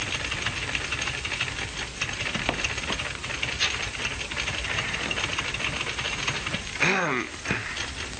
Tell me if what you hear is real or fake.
real